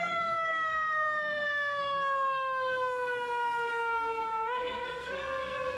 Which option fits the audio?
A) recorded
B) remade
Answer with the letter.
B